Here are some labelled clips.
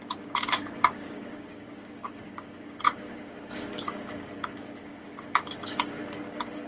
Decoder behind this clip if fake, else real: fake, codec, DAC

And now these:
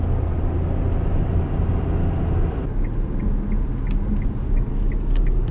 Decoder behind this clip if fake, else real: real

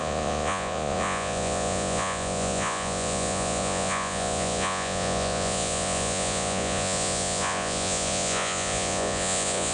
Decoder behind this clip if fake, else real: fake, vocoder, Vocos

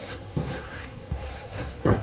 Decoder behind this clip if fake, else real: fake, codec, SNAC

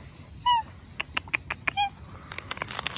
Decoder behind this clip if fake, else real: real